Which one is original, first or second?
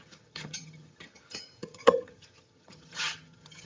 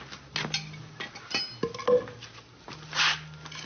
second